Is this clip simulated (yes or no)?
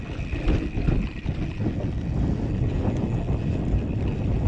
no